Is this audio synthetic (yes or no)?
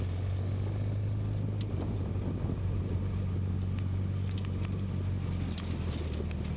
no